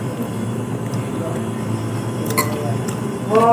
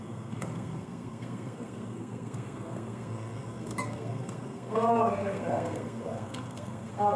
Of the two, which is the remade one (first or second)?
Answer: second